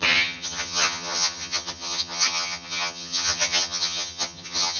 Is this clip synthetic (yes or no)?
yes